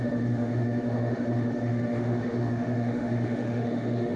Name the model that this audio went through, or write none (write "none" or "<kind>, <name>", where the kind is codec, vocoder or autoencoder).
autoencoder, DAC-VAE